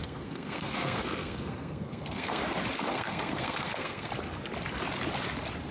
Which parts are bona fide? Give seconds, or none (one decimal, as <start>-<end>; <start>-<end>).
2.4-2.9; 4.1-5.7